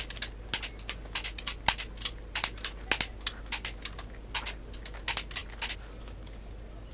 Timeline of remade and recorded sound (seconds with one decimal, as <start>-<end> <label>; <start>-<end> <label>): 0.0-6.9 recorded

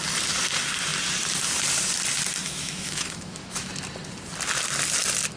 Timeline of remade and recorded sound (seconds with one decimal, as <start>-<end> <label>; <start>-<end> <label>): 0.0-2.4 recorded; 2.4-3.7 remade; 3.7-5.4 recorded